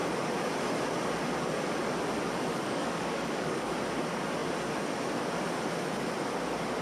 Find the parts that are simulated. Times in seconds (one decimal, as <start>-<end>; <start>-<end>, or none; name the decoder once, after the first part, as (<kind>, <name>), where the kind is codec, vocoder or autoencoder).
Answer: 2.5-3.7 (codec, DAC)